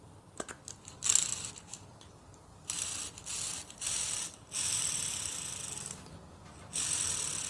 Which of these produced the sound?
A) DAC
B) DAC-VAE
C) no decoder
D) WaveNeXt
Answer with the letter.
C